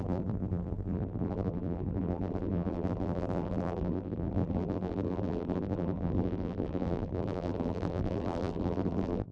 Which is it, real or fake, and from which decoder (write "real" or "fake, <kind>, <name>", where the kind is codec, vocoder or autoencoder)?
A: fake, vocoder, BigVGAN v2